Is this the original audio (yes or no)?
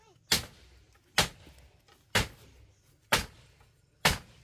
yes